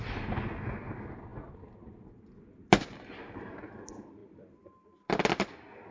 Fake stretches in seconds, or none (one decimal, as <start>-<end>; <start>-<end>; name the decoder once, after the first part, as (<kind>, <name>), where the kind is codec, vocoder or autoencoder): none